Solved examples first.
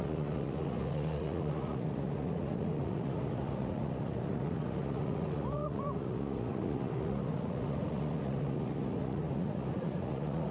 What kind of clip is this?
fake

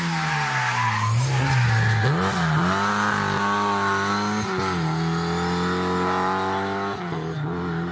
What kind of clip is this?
real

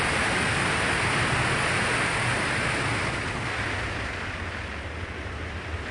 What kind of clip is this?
real